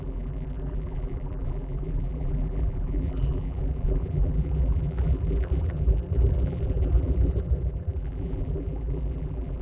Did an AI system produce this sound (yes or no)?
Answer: yes